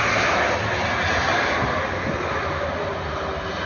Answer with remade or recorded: recorded